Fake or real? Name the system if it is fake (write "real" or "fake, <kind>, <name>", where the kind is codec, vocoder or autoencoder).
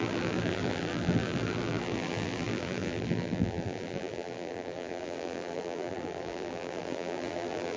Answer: fake, vocoder, BigVGAN v2